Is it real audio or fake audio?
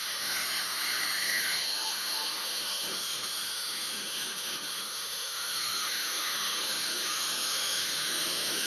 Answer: fake